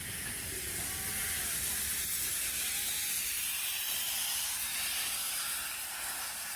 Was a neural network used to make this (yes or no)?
no